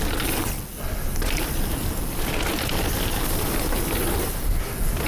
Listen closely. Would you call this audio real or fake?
real